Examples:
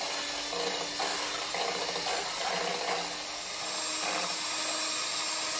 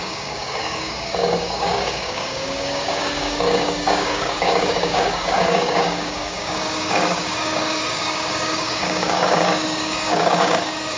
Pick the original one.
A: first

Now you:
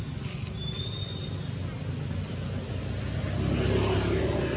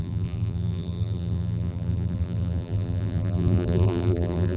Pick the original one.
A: first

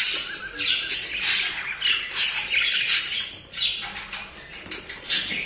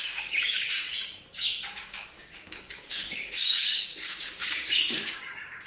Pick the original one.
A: first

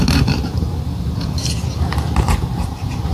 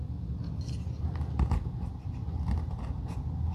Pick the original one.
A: second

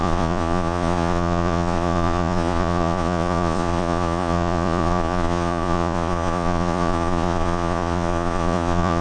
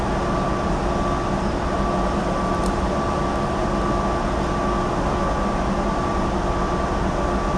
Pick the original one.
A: second